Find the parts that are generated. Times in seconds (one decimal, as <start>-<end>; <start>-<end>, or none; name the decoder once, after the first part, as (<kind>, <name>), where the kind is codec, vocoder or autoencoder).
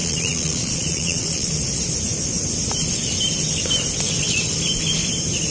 0.0-1.5 (vocoder, Vocos)